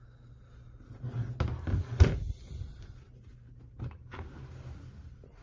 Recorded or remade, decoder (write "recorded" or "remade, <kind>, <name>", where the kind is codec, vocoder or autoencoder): recorded